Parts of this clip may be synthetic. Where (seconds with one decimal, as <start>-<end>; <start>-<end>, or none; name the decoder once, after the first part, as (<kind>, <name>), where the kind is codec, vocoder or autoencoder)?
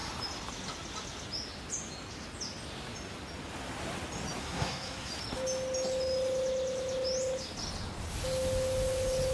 4.4-5.1 (codec, SNAC)